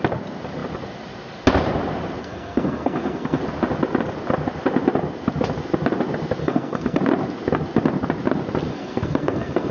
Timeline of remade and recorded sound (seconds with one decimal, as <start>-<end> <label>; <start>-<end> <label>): 0.0-2.2 recorded; 2.2-3.4 remade; 3.4-6.4 recorded; 6.4-7.0 remade; 7.0-8.7 recorded; 8.7-9.7 remade